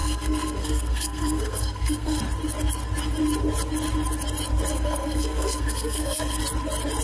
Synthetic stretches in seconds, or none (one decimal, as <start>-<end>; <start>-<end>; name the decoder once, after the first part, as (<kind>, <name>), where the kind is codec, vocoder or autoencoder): 0.0-2.2 (codec, SNAC); 4.7-6.4